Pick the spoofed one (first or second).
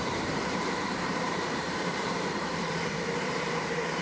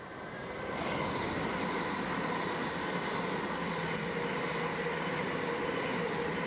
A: first